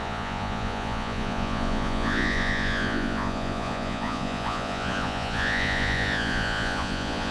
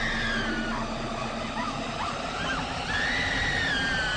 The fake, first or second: first